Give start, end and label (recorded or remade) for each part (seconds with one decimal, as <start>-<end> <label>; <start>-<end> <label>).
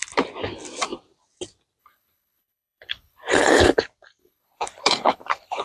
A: 0.0-1.8 recorded; 1.8-3.8 remade; 3.8-4.2 recorded; 4.2-5.6 remade